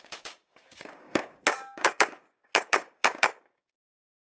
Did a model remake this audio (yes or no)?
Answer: yes